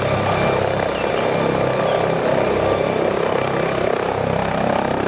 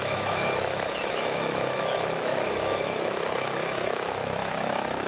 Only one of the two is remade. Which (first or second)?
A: second